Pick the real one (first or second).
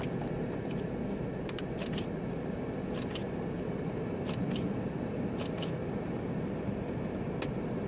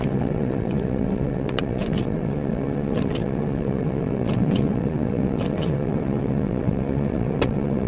first